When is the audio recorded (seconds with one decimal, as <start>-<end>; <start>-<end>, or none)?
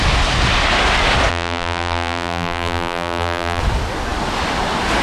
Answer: 0.0-1.3; 3.6-5.0